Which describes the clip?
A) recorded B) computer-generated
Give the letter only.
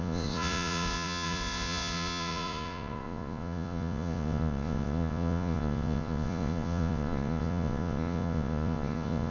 B